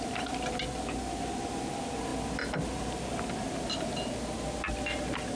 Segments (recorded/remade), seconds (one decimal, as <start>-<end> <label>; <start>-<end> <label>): 0.0-5.4 recorded

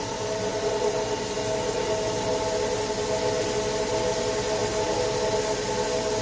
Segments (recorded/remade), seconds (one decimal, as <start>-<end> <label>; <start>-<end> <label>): 0.0-6.2 recorded

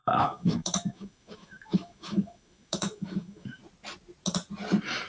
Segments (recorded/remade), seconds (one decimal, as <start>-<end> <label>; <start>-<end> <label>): 0.0-3.6 remade; 3.6-5.1 recorded

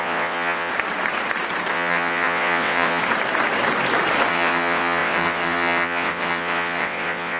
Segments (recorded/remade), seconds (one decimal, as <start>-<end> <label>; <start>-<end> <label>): 0.0-0.7 remade; 0.7-1.7 recorded; 1.7-3.0 remade; 3.0-4.3 recorded; 4.3-7.4 remade